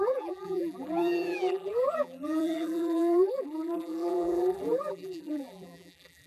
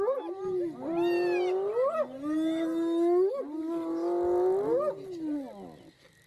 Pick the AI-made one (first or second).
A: first